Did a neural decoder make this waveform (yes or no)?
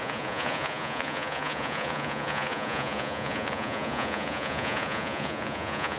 yes